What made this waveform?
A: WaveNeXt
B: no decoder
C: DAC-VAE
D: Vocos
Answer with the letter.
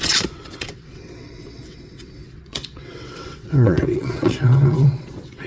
A